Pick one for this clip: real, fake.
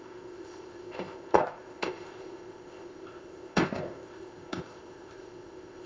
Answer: fake